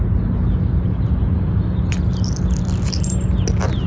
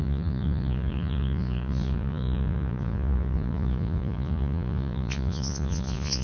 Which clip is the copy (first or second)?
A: second